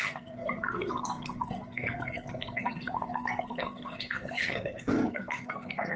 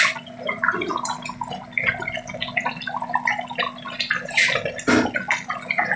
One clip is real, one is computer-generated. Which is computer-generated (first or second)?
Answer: first